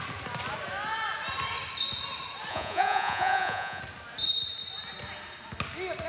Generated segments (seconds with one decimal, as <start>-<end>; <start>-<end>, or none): 2.5-3.8